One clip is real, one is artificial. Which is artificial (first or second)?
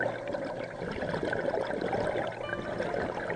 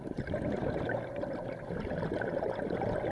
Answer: second